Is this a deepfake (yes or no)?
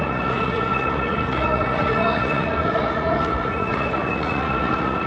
yes